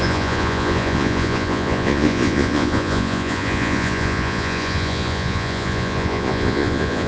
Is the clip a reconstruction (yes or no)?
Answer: yes